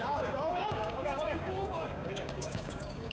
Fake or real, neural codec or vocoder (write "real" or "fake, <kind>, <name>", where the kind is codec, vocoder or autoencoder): fake, codec, DAC